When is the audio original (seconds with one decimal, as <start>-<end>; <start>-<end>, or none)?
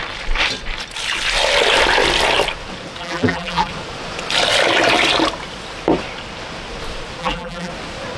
0.0-3.0; 3.7-7.2; 7.7-8.2